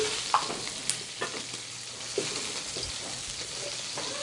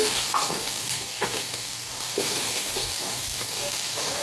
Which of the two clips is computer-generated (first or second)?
second